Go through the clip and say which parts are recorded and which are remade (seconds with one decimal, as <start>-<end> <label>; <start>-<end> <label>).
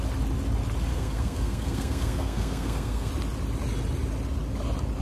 0.0-0.9 recorded; 0.9-3.1 remade; 3.1-5.0 recorded